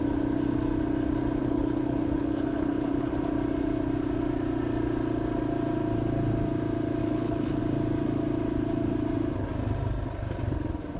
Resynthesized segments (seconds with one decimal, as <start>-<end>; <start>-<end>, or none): 1.4-3.1; 7.0-7.6